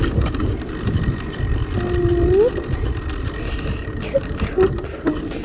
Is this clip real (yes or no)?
yes